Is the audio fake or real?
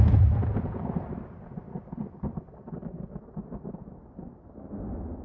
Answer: real